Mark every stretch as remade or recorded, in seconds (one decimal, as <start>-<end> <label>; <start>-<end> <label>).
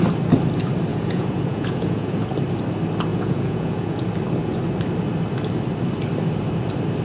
0.0-0.9 recorded; 0.9-2.3 remade; 2.3-3.1 recorded; 3.1-4.0 remade; 4.0-7.0 recorded